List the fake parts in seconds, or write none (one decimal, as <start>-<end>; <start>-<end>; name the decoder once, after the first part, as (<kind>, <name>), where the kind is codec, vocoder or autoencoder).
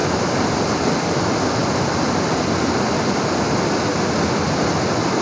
none